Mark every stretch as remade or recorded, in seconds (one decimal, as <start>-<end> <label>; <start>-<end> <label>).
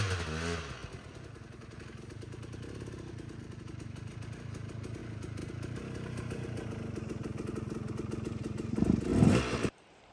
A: 0.0-9.1 recorded; 9.1-10.1 remade